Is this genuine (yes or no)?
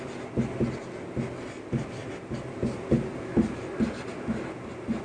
yes